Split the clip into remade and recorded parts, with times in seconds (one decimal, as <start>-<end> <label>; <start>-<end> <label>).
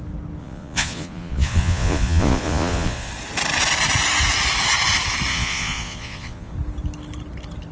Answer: 0.0-0.4 recorded; 0.4-3.1 remade; 3.1-5.3 recorded; 5.3-6.5 remade; 6.5-7.7 recorded